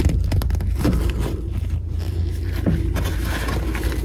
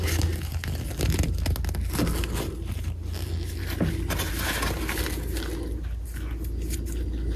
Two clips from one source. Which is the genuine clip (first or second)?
second